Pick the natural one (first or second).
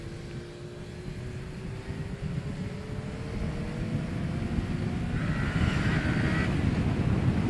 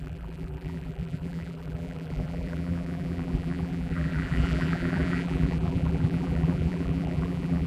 first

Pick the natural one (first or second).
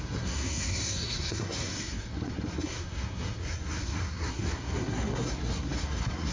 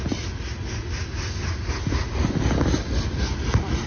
second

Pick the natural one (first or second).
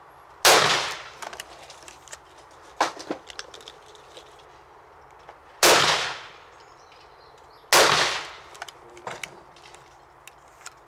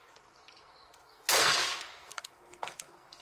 first